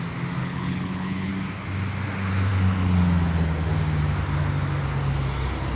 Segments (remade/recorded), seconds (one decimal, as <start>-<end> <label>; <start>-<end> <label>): 0.0-0.4 recorded; 0.4-1.3 remade; 1.3-5.8 recorded

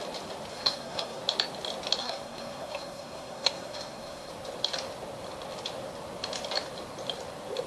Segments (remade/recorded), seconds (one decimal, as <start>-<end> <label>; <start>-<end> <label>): 0.0-0.5 recorded; 0.5-1.2 remade; 1.2-2.0 recorded; 2.0-4.3 remade; 4.3-7.7 recorded

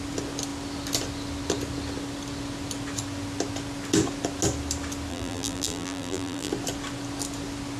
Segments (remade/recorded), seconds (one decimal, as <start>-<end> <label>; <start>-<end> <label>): 0.0-5.1 recorded; 5.1-6.5 remade; 6.5-7.8 recorded